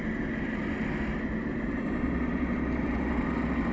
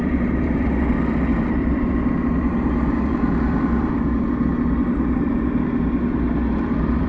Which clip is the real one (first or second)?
first